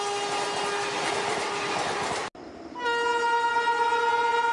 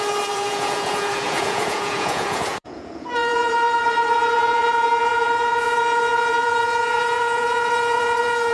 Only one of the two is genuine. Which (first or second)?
first